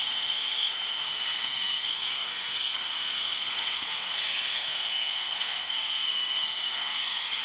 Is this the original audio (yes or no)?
no